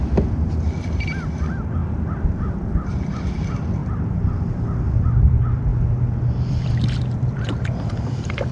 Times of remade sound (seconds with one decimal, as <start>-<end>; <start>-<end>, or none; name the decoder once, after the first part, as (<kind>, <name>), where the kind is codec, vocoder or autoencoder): 0.0-1.8 (vocoder, BigVGAN v2); 2.3-3.8; 5.0-5.7; 6.4-8.5